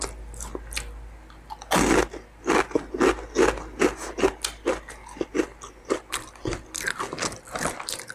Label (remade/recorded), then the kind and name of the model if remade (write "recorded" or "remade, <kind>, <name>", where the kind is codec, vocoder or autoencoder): recorded